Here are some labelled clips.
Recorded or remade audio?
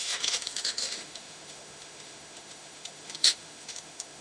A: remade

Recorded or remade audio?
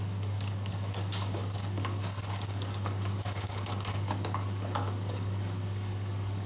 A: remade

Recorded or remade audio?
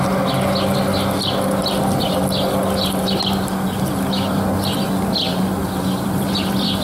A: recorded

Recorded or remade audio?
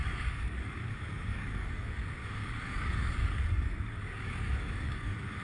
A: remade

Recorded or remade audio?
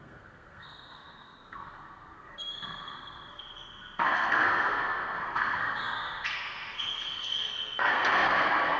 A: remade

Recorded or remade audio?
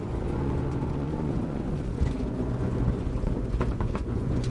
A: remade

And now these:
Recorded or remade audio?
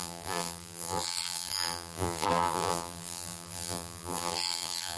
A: remade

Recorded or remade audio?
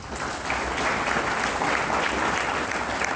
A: recorded